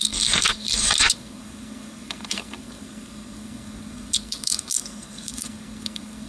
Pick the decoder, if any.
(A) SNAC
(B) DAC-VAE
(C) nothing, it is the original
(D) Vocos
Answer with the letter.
A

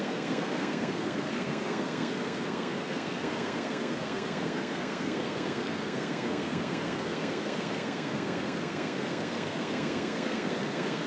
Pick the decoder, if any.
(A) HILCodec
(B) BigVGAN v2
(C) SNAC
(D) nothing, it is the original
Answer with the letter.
C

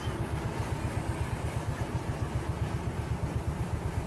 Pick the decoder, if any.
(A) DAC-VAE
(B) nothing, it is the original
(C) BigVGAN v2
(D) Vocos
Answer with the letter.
B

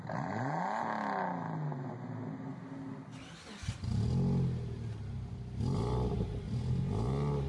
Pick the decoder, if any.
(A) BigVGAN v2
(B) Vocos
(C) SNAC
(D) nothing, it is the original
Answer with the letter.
D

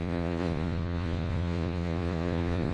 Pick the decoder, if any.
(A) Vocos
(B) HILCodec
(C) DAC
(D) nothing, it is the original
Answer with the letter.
A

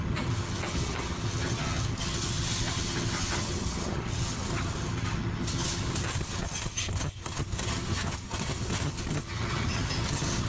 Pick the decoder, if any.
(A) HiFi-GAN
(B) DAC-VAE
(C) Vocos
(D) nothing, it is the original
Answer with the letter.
A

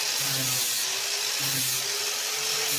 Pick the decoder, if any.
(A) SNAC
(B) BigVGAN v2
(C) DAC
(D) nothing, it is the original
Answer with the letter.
D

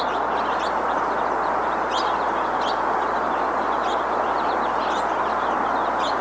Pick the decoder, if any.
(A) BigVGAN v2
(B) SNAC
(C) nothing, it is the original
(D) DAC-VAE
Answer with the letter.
C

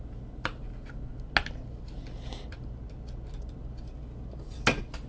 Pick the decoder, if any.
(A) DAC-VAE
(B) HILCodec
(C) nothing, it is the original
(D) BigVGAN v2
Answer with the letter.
C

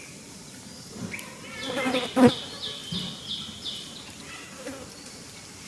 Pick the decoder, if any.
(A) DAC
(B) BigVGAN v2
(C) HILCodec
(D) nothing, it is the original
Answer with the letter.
B